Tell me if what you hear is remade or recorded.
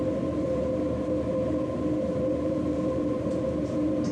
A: remade